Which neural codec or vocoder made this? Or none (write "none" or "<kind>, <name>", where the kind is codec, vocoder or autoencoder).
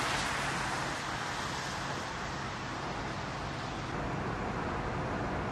none